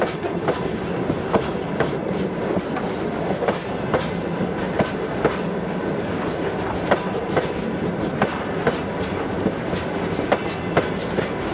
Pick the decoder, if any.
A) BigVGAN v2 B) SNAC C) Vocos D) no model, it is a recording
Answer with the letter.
D